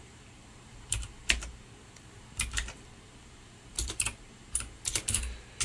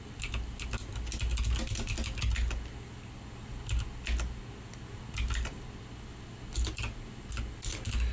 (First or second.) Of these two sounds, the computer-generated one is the first